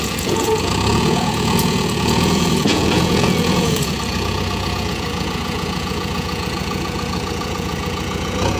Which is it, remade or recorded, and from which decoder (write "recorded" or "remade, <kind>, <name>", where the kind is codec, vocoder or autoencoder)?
remade, vocoder, Vocos